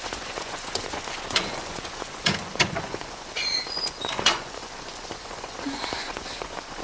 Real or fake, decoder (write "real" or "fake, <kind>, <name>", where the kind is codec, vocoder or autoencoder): fake, vocoder, Vocos